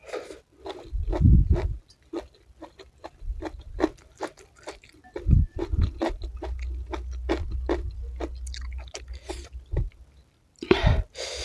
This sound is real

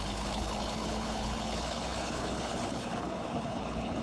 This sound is fake